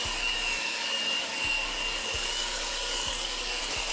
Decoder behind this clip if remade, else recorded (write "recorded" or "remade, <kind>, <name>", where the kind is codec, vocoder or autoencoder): remade, codec, DAC